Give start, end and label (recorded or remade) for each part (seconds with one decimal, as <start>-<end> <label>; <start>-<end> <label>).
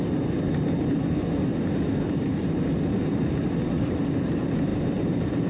0.0-5.5 recorded